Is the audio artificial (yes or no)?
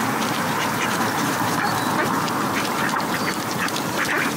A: yes